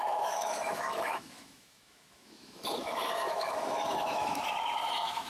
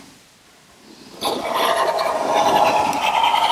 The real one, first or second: second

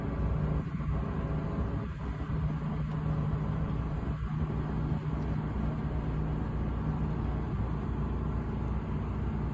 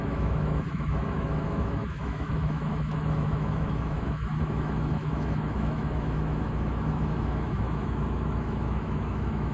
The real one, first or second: first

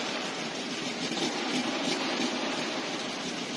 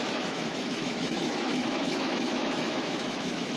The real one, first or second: first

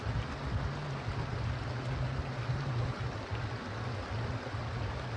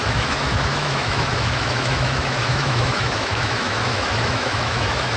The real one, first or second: first